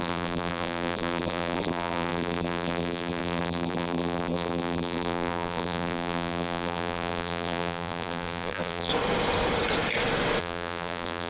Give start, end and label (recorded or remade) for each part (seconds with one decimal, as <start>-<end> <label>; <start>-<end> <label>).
0.0-8.9 remade; 8.9-10.4 recorded; 10.4-11.3 remade